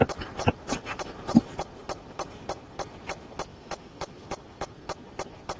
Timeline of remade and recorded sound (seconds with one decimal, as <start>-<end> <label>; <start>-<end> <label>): 0.0-3.5 recorded; 3.5-4.7 remade; 4.7-5.6 recorded